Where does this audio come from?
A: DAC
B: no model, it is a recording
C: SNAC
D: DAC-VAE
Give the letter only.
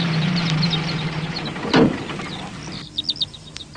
B